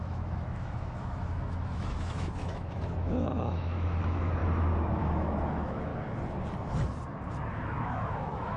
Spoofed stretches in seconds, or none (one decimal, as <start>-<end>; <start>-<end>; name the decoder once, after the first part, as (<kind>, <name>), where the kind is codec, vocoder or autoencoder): 0.0-4.4 (autoencoder, DAC-VAE); 4.9-5.9; 7.5-8.6